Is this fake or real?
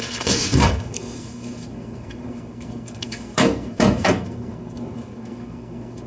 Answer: fake